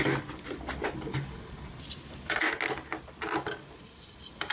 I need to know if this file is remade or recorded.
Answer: recorded